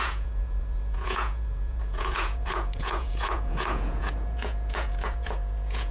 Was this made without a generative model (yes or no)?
no